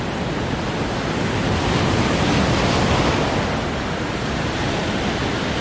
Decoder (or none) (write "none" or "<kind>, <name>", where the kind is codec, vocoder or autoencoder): none